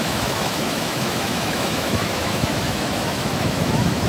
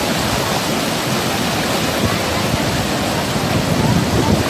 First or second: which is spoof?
first